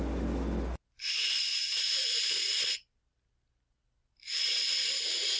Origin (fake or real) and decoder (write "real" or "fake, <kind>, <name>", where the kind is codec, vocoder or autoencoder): real